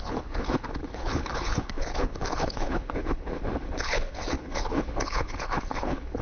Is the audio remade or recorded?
remade